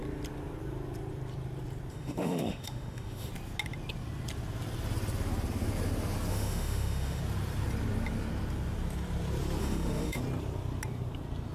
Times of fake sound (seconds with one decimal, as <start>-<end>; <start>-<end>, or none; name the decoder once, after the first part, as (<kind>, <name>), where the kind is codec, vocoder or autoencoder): 1.9-3.3 (autoencoder, DAC-VAE); 6.3-7.2; 9.6-10.2